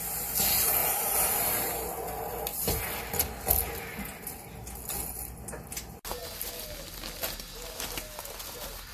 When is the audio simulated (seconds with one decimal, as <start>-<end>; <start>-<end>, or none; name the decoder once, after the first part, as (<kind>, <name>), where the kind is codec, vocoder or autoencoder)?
0.8-1.8 (vocoder, BigVGAN v2)